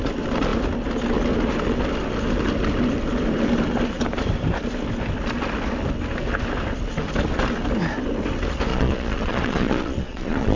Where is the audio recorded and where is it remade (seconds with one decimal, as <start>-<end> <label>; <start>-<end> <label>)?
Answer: 0.0-8.7 recorded; 8.7-10.6 remade